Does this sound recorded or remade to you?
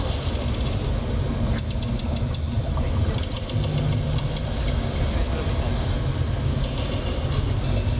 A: recorded